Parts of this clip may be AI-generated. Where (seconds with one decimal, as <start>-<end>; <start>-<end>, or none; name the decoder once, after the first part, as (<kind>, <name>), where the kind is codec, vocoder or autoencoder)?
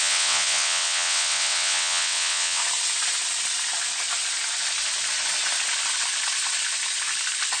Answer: 0.0-2.6 (vocoder, WaveNeXt)